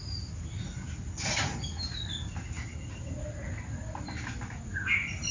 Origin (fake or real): real